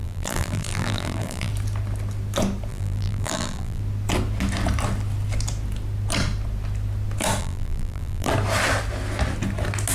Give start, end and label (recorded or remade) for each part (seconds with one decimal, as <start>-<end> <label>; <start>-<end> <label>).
0.0-1.5 remade; 1.5-2.7 recorded; 2.7-3.8 remade; 3.8-7.4 recorded; 7.4-8.3 remade; 8.3-9.9 recorded

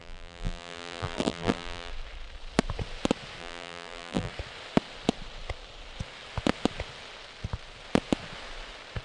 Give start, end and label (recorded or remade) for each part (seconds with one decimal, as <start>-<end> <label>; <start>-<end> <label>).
0.0-1.9 remade; 1.9-3.4 recorded; 3.4-4.3 remade; 4.3-9.0 recorded

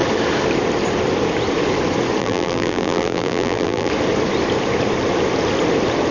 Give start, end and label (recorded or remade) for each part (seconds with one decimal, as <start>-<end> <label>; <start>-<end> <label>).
0.0-2.2 recorded; 2.2-3.9 remade; 3.9-6.1 recorded

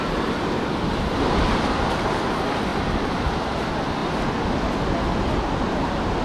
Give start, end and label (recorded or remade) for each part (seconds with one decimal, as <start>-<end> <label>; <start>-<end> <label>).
0.0-6.2 recorded